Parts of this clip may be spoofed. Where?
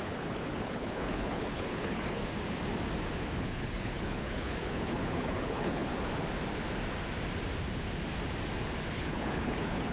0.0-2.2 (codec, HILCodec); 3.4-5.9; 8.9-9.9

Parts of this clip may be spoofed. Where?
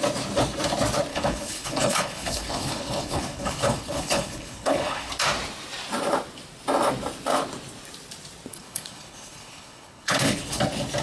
1.1-5.1 (codec, HILCodec); 8.5-10.6